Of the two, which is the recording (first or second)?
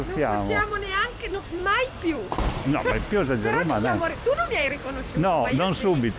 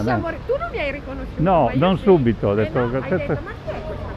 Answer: second